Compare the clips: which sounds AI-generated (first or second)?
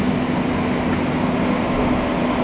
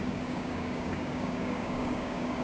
second